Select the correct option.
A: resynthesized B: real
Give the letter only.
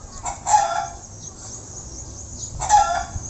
B